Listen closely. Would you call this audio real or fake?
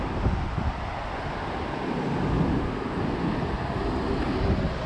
real